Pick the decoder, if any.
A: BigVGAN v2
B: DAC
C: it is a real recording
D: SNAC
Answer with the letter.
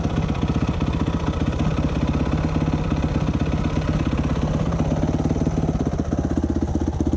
C